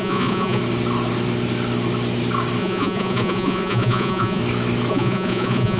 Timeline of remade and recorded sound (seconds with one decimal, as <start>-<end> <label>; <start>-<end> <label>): 0.0-0.6 remade; 0.6-2.6 recorded; 2.6-4.4 remade; 4.4-4.9 recorded; 4.9-5.8 remade